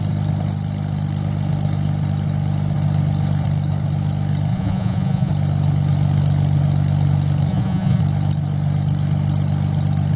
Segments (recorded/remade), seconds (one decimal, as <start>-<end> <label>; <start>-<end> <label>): 0.0-4.5 recorded; 4.5-5.3 remade; 5.3-7.5 recorded; 7.5-8.0 remade; 8.0-10.2 recorded